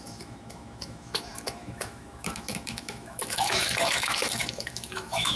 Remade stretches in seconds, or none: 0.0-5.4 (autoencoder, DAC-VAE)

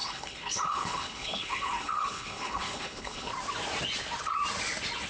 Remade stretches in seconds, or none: 0.0-3.3 (codec, HILCodec)